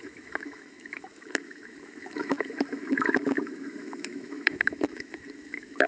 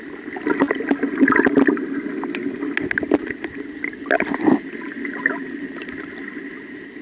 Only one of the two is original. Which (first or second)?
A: second